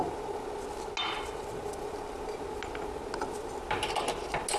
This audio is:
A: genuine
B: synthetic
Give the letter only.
A